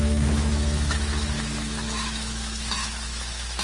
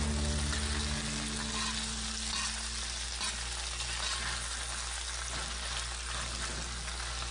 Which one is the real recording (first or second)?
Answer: second